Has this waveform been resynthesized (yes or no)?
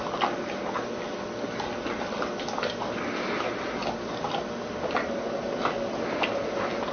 no